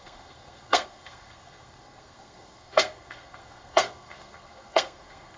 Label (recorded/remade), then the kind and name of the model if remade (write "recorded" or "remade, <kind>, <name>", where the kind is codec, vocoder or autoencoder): remade, codec, SNAC